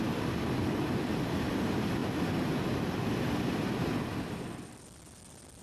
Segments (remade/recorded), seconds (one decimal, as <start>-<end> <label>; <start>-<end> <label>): 0.0-5.6 recorded